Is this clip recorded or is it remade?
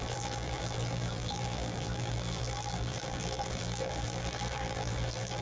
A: remade